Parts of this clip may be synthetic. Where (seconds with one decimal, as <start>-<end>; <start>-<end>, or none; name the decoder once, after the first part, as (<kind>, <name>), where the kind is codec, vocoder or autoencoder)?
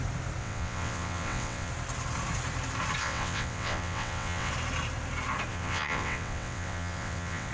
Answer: 0.4-1.7 (vocoder, WaveNeXt); 3.0-4.5; 5.5-7.5